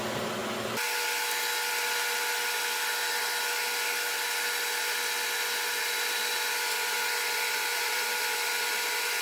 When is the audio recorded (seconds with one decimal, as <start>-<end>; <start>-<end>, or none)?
0.0-7.7; 8.5-9.2